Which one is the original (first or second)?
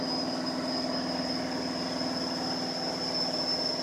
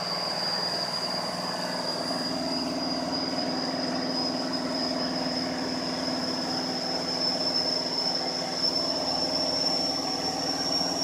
first